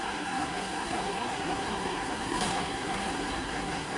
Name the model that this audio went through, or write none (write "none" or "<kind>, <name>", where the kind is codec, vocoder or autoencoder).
codec, SNAC